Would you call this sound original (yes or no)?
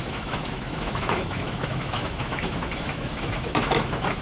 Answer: no